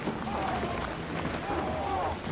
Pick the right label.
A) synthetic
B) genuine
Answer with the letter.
B